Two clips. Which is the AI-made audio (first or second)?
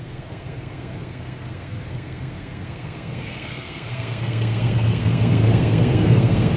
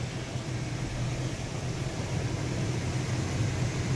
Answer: first